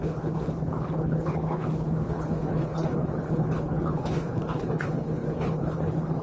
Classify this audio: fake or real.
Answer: fake